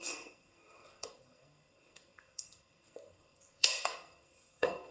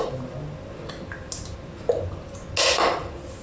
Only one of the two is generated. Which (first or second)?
first